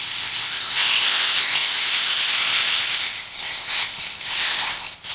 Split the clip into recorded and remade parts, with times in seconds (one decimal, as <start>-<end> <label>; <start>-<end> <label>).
0.0-5.1 remade